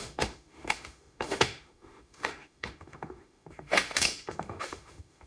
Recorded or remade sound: remade